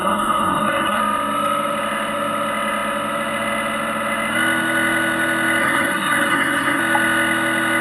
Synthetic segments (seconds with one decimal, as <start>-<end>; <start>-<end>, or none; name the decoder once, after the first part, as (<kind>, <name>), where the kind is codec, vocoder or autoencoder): 0.0-1.0 (codec, SNAC); 5.6-6.8